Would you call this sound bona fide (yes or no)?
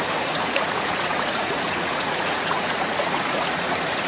no